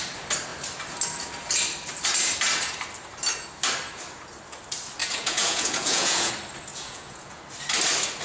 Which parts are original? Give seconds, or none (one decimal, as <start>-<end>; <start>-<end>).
0.0-5.0; 6.3-6.7; 7.4-8.2